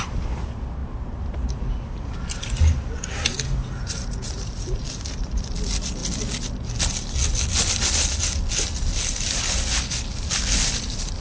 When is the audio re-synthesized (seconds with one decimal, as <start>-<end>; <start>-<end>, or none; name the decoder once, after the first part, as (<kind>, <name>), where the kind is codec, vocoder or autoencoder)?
0.8-1.7 (vocoder, BigVGAN v2); 3.6-5.4